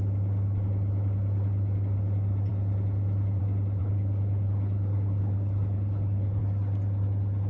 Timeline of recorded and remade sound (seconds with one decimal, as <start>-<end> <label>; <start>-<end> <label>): 0.0-3.8 recorded; 3.8-6.4 remade; 6.4-7.5 recorded